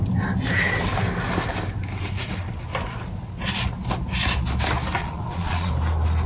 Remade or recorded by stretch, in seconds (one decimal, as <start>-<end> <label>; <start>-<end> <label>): 0.0-5.0 recorded; 5.0-5.7 remade; 5.7-6.3 recorded